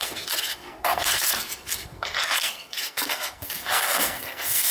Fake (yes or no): yes